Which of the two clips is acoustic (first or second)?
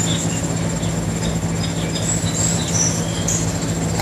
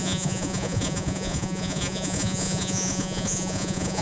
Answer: first